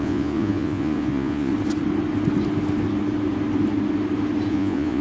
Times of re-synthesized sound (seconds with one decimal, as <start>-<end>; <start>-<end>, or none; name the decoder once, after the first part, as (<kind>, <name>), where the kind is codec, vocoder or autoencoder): 0.0-1.5 (vocoder, Vocos); 4.5-5.0